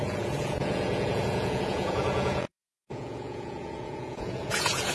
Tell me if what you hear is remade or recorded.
remade